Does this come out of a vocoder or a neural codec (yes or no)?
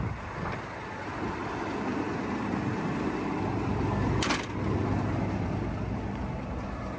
no